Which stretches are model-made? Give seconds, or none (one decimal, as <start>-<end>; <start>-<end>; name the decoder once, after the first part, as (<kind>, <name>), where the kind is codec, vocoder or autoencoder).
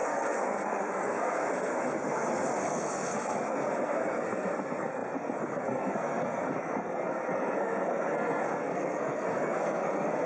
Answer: 0.0-10.3 (codec, SNAC)